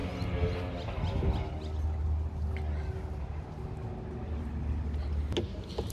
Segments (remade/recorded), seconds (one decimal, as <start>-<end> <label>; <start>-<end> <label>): 0.0-5.9 recorded

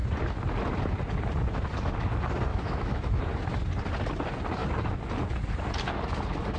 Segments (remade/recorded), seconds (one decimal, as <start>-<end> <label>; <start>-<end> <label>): 0.0-2.5 recorded; 2.5-3.2 remade; 3.2-6.6 recorded

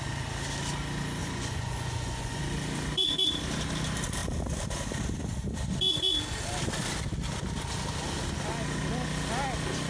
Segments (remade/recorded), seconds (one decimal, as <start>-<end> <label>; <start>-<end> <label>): 0.0-1.2 recorded; 1.2-2.4 remade; 2.4-9.9 recorded

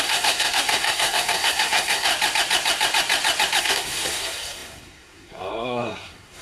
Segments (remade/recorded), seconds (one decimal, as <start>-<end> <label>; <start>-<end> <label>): 0.0-2.1 remade; 2.1-3.6 recorded; 3.6-6.4 remade

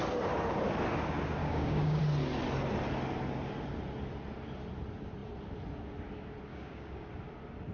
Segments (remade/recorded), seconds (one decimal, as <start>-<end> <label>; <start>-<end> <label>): 0.0-1.4 recorded; 1.4-2.0 remade; 2.0-6.5 recorded; 6.5-7.1 remade; 7.1-7.7 recorded

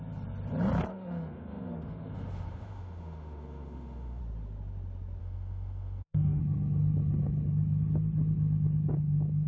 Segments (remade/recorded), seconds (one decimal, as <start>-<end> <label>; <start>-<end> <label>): 0.0-0.9 recorded; 0.9-4.2 remade; 4.2-5.2 recorded; 5.2-6.4 remade; 6.4-9.5 recorded